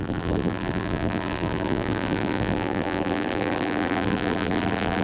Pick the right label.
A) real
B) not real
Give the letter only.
B